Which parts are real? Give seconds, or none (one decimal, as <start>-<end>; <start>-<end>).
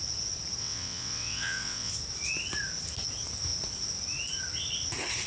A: 0.0-0.6; 1.9-5.3